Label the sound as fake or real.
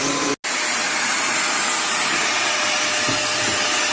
real